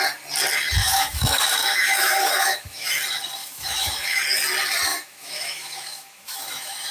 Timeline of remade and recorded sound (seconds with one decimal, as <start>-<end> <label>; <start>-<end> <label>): 0.0-0.8 recorded; 0.8-2.9 remade; 2.9-3.4 recorded; 3.4-4.2 remade; 4.2-4.9 recorded; 4.9-6.9 remade